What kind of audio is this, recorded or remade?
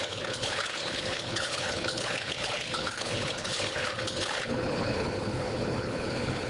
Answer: remade